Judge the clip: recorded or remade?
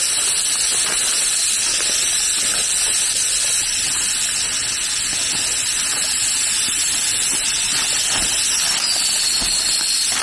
recorded